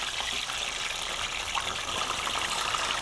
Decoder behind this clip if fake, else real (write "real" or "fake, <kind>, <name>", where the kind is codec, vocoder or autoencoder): real